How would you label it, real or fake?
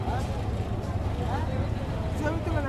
real